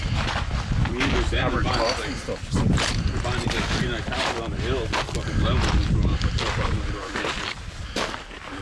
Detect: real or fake real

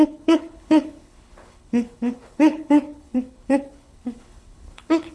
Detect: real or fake fake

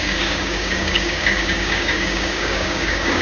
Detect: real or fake fake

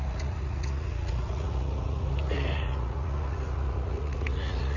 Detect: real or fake fake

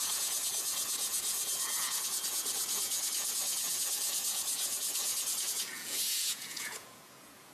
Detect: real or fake fake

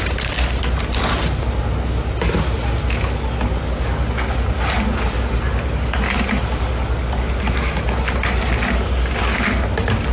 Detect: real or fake real